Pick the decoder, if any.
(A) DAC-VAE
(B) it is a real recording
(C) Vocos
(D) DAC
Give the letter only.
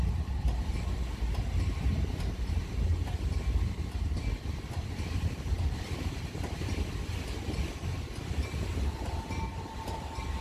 B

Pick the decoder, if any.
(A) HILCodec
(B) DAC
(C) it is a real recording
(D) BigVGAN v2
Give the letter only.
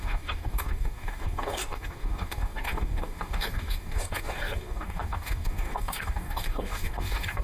B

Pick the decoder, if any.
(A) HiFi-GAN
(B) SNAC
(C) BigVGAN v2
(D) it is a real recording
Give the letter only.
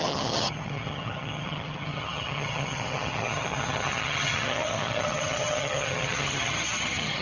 A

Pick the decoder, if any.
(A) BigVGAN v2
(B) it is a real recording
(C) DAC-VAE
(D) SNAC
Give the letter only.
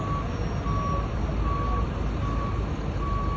B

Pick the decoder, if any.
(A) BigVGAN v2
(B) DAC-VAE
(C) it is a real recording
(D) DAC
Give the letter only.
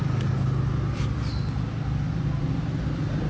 C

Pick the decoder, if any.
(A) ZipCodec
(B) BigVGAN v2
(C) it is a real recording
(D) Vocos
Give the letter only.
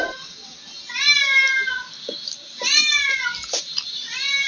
C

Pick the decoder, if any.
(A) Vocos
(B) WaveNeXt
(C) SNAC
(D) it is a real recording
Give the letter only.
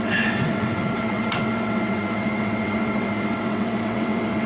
B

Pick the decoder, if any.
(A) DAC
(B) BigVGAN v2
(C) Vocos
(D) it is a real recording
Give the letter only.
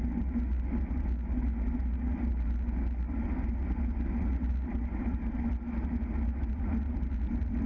D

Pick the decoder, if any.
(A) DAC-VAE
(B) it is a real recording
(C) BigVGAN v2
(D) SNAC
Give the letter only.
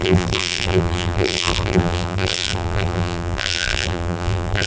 C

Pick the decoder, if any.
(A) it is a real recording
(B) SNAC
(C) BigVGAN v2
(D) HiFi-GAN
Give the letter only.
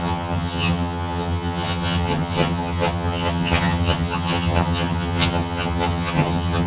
D